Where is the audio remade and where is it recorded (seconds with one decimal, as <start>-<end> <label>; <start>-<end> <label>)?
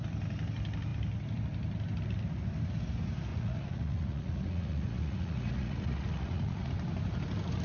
0.0-3.3 recorded; 3.3-6.7 remade; 6.7-7.6 recorded